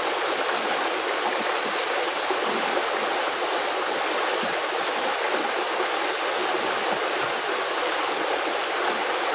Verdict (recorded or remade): recorded